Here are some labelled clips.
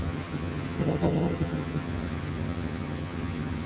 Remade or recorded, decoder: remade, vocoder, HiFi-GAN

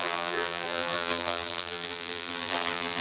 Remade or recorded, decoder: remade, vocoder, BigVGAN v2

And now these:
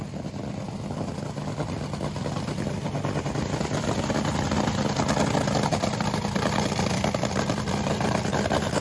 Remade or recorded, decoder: recorded